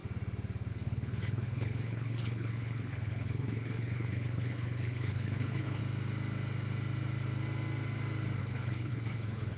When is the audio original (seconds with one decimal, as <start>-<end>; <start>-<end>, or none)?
0.0-0.7; 5.8-8.4